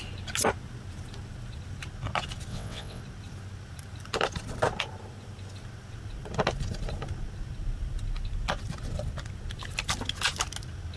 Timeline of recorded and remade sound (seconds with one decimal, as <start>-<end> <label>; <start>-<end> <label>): 0.0-2.5 recorded; 2.5-3.0 remade; 3.0-11.0 recorded